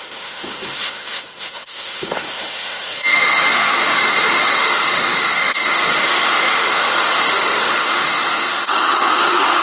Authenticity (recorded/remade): remade